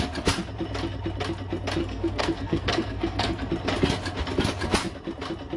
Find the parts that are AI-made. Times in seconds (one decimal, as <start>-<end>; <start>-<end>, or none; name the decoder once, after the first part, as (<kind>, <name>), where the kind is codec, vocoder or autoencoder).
1.8-3.5 (codec, SNAC)